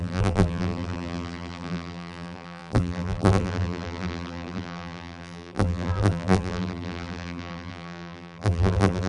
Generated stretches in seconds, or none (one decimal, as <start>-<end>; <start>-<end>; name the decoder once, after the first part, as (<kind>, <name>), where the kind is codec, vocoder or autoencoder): 0.0-9.1 (vocoder, BigVGAN v2)